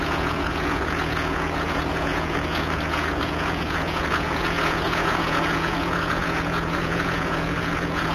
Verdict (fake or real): fake